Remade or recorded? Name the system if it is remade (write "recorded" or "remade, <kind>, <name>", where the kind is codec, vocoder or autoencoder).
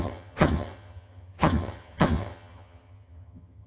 remade, vocoder, HiFi-GAN